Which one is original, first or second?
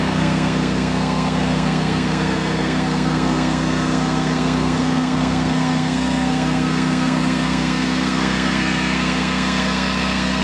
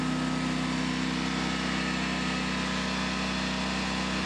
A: second